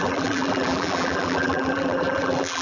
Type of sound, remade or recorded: remade